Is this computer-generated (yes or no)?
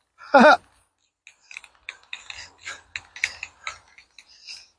no